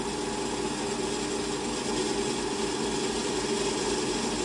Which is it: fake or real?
real